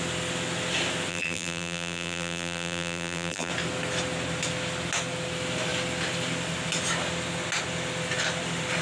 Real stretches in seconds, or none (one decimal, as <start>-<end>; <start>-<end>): 0.0-1.1; 3.5-8.8